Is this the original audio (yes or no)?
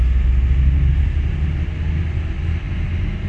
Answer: yes